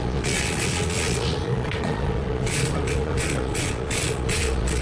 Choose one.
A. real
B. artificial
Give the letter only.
B